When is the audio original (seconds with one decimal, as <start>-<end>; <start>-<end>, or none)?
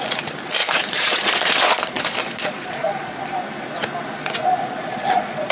0.0-0.6; 3.2-4.6